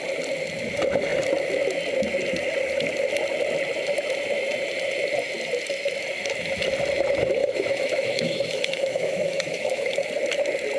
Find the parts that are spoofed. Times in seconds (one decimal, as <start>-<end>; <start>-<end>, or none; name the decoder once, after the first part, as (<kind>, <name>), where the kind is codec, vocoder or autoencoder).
7.4-10.1 (autoencoder, DAC-VAE)